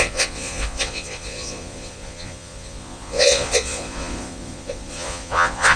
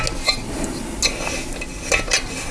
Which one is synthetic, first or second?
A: first